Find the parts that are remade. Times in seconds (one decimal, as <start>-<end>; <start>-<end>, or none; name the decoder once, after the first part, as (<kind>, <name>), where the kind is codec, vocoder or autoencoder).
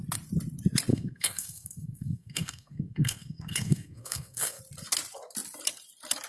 0.9-4.6 (codec, SNAC)